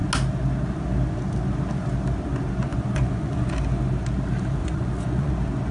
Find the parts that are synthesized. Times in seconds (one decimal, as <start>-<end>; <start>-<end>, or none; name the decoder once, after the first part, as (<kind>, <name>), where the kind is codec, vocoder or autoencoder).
2.6-3.5 (vocoder, Vocos); 4.6-5.3